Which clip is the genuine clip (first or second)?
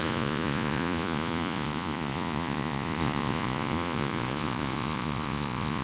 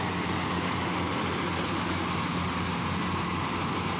second